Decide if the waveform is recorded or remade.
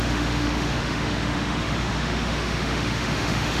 remade